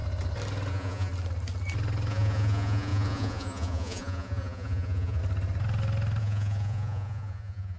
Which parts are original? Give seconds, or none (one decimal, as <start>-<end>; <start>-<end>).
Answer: 0.0-0.7; 1.1-2.1; 5.2-6.2